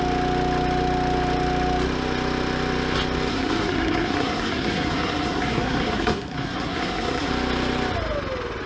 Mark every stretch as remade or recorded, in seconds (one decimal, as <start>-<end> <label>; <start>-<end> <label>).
0.0-3.3 recorded; 3.3-7.3 remade; 7.3-8.7 recorded